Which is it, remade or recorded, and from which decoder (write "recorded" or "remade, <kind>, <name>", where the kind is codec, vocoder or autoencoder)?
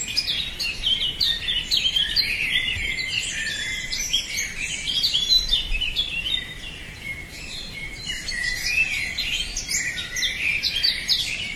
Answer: remade, vocoder, BigVGAN v2